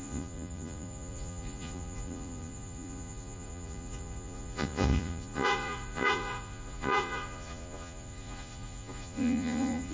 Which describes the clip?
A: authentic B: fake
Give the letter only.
B